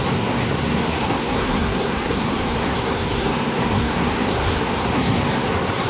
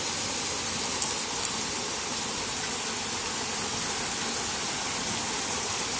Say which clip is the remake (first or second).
first